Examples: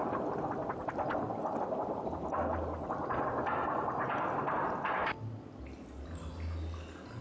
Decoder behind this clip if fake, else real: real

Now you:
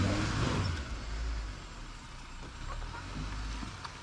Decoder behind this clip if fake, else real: real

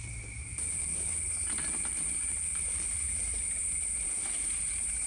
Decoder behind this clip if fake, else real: fake, vocoder, BigVGAN v2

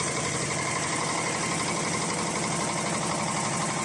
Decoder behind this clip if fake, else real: real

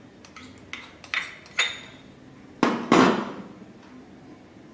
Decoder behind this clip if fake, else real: real